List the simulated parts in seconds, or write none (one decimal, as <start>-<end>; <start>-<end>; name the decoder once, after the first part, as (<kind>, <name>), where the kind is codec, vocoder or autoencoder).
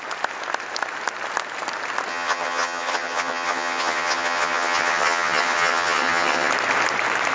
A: 2.1-6.5 (vocoder, HiFi-GAN)